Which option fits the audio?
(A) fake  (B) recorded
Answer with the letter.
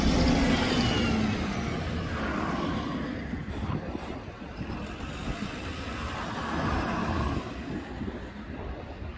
B